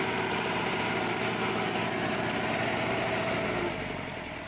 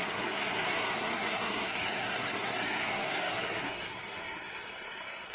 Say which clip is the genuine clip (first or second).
first